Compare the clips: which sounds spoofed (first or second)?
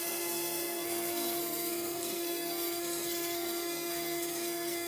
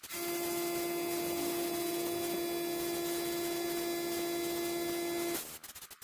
first